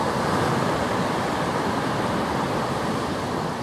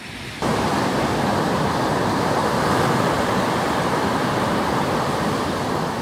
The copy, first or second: first